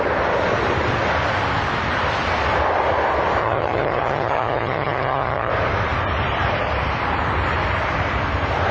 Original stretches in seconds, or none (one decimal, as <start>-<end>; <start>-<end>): 0.0-3.4; 5.5-8.7